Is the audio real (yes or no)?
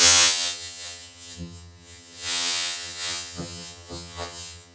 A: no